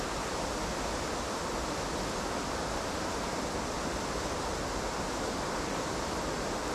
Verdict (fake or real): real